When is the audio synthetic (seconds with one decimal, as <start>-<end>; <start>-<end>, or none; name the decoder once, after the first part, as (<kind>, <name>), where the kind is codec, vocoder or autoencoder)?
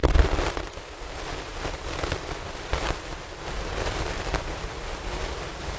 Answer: 0.0-0.6 (vocoder, BigVGAN v2); 1.5-4.6